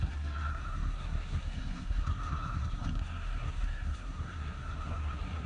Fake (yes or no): yes